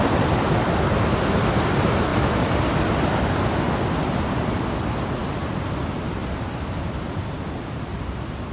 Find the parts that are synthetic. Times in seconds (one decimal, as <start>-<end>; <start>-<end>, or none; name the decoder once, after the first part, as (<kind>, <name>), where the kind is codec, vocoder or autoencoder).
2.1-2.7 (vocoder, BigVGAN v2); 6.2-7.4